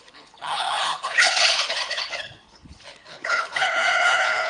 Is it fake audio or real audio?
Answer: fake